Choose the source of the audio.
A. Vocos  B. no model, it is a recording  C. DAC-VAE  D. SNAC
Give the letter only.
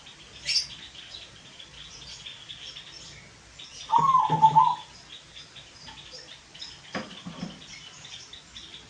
B